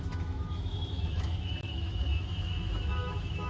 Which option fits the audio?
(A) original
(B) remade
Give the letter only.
B